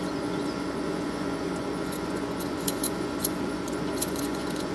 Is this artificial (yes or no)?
yes